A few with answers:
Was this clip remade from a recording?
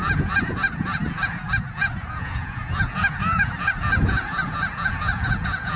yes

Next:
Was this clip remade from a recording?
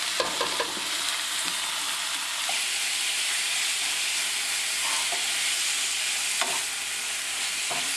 no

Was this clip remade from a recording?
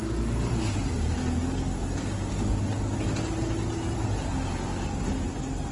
no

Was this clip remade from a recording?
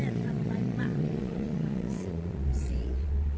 yes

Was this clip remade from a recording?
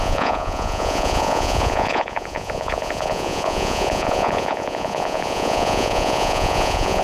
yes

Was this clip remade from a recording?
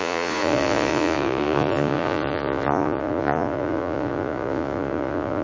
yes